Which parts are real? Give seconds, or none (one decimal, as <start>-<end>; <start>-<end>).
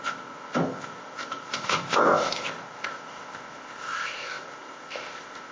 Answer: none